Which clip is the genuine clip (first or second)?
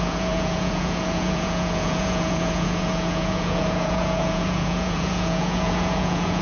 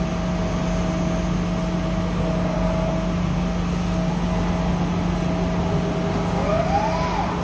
second